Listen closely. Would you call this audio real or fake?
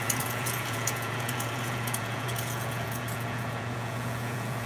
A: fake